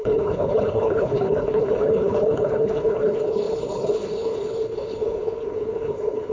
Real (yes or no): no